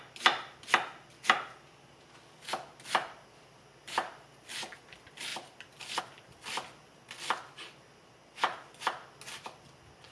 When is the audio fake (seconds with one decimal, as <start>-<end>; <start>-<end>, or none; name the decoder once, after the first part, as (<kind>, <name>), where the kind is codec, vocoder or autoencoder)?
none